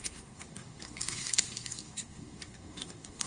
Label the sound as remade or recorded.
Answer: remade